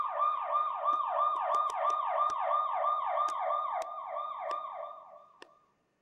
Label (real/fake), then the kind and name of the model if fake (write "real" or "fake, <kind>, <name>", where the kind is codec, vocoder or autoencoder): real